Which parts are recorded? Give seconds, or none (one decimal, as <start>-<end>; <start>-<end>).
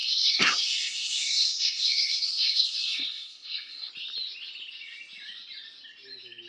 3.9-6.5